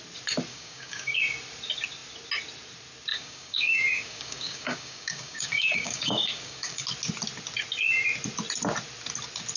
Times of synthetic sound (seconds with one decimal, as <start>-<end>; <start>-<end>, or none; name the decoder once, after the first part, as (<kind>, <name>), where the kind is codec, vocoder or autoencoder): 0.5-1.2 (codec, DAC); 3.1-6.8